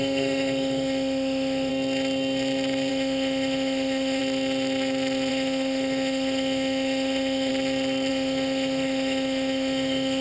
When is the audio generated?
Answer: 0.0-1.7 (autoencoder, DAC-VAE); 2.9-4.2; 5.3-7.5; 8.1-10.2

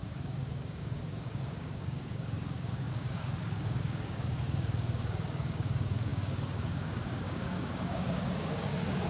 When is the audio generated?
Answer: 0.0-9.1 (codec, DAC)

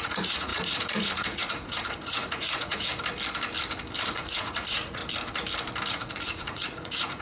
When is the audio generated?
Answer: 0.0-2.9 (vocoder, Vocos); 4.0-5.0; 5.9-7.2

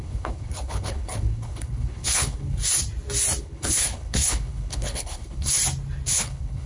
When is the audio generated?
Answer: 0.0-2.6 (codec, HILCodec); 3.4-5.6; 6.1-6.7

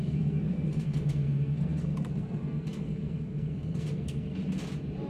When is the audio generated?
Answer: 0.0-4.4 (codec, SNAC)

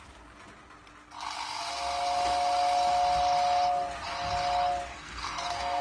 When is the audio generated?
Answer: 4.9-5.8 (codec, SNAC)

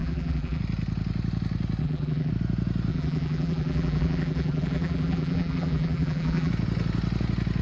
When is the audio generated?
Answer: 0.0-0.6 (vocoder, BigVGAN v2); 1.8-2.3; 2.9-6.5

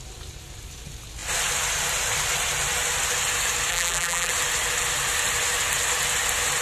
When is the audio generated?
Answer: 3.7-4.3 (vocoder, BigVGAN v2)